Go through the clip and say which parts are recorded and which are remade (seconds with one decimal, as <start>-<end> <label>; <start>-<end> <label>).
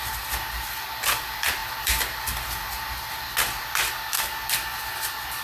0.0-5.4 recorded